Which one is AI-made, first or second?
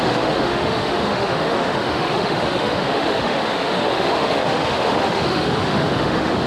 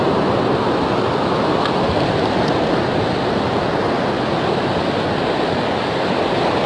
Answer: first